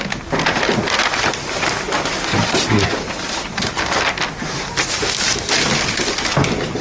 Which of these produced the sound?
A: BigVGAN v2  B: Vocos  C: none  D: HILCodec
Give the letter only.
C